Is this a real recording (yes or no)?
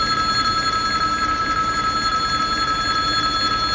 yes